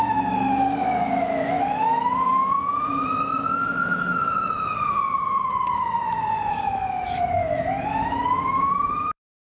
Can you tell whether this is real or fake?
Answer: fake